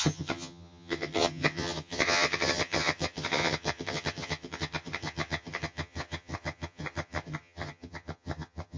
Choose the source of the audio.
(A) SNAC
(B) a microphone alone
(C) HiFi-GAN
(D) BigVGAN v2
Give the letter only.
C